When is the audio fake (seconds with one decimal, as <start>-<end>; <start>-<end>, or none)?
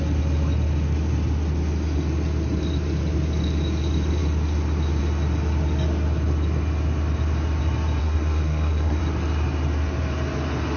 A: 8.0-9.0